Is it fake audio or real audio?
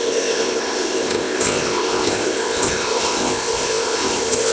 fake